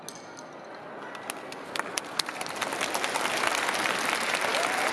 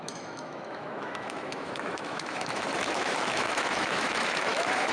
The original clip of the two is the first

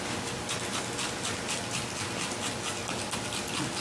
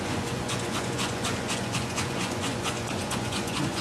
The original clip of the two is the first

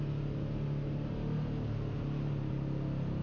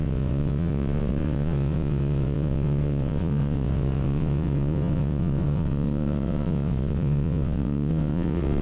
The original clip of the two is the first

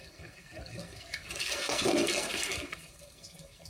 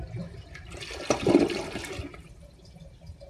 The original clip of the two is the second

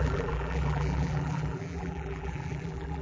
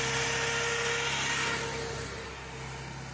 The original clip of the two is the second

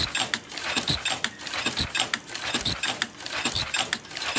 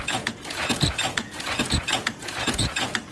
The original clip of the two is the first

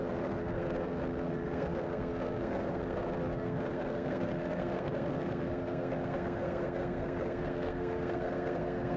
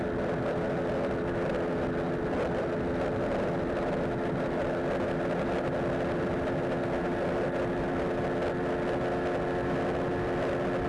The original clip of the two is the second